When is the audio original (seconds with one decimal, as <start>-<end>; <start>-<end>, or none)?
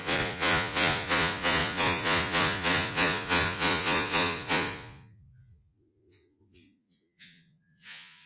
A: none